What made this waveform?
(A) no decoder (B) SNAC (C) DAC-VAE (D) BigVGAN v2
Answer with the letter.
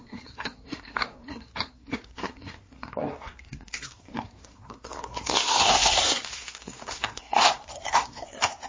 B